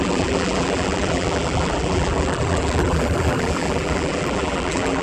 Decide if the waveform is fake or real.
fake